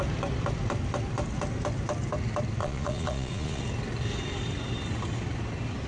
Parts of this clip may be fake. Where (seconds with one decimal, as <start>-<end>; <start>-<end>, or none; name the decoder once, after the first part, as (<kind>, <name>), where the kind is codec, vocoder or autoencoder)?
2.6-3.6 (vocoder, Vocos)